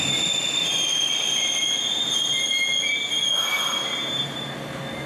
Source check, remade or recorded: recorded